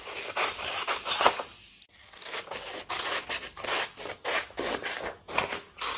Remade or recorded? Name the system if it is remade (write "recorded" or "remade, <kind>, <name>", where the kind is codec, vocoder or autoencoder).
recorded